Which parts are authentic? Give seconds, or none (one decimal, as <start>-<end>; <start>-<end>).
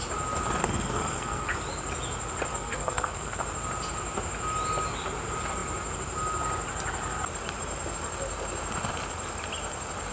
0.0-0.6; 1.5-2.5; 3.4-10.1